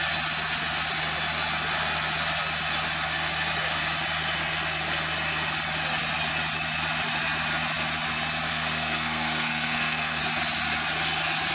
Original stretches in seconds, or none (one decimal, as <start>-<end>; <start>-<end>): 0.0-8.5; 10.2-11.5